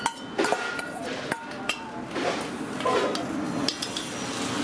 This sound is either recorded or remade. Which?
recorded